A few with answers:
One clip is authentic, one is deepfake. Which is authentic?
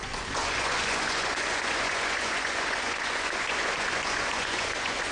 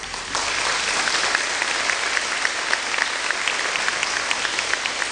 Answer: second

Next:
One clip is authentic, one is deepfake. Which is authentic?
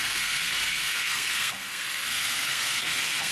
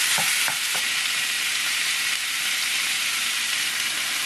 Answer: second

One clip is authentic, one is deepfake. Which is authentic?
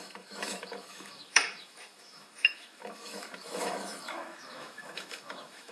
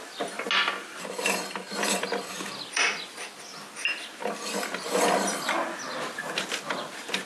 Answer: second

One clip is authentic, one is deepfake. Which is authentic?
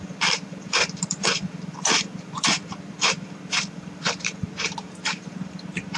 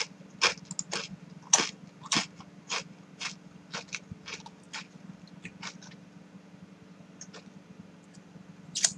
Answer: second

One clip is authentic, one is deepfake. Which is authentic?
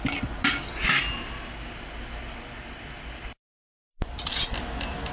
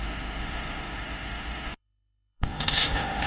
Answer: first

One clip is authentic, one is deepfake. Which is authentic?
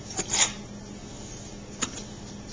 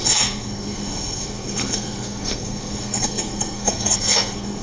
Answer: first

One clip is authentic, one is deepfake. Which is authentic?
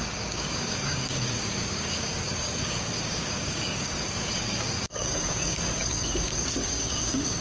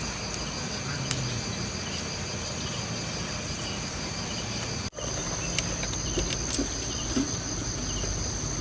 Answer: second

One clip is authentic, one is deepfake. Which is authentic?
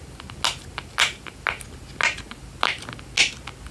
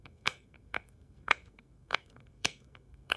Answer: first